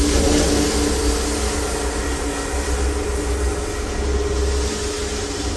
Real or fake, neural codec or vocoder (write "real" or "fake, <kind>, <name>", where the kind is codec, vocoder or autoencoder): real